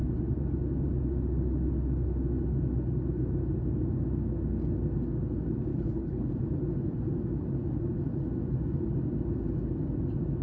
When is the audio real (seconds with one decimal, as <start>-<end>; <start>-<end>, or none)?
0.0-5.7; 6.3-10.4